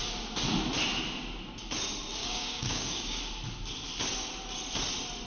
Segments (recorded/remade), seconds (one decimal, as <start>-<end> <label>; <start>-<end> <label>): 0.0-2.2 recorded; 2.2-3.2 remade; 3.2-5.3 recorded